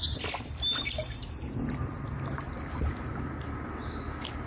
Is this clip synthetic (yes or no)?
no